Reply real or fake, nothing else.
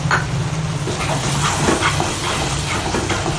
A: real